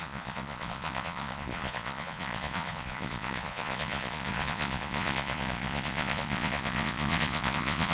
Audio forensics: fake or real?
fake